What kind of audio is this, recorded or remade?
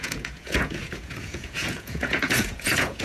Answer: remade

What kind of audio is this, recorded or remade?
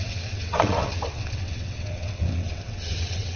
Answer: remade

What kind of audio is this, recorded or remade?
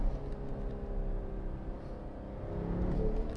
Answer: recorded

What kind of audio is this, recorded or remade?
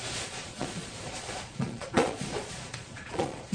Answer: remade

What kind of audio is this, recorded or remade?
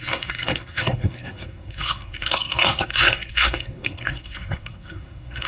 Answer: remade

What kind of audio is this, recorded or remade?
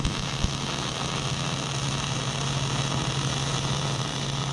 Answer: recorded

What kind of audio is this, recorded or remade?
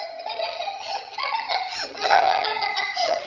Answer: remade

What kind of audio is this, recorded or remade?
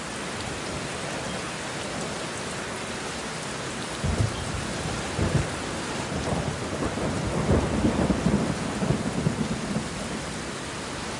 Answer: recorded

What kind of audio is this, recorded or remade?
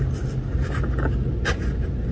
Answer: recorded